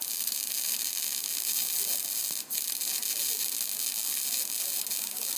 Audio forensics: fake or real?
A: real